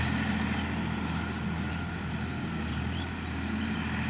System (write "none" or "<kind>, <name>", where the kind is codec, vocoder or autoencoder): none